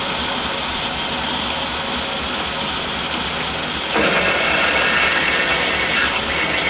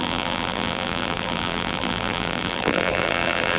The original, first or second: first